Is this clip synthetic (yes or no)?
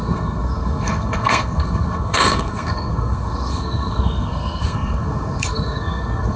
yes